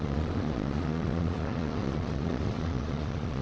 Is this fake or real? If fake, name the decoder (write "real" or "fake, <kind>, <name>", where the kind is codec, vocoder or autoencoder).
fake, vocoder, Vocos